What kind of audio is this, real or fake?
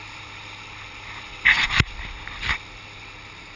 real